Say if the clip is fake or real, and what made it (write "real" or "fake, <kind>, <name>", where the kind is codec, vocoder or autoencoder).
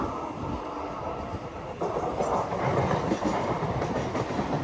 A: real